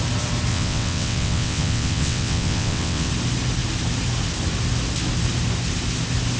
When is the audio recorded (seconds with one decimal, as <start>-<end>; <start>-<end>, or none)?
0.0-0.5; 3.1-6.4